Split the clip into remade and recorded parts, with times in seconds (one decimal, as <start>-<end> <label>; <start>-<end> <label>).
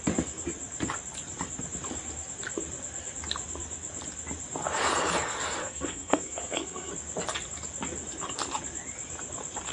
0.0-5.6 recorded; 5.6-6.9 remade; 6.9-9.7 recorded